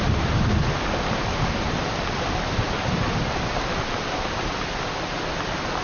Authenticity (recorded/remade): recorded